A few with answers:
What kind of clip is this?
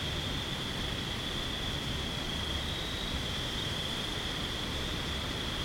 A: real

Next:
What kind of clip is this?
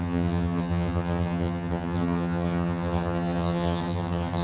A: fake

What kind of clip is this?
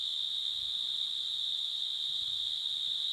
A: real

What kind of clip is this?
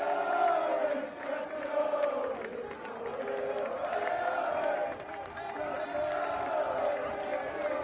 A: real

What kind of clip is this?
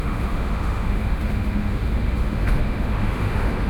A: fake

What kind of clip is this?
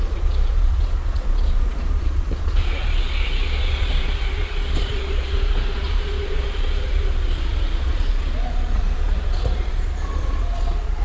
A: fake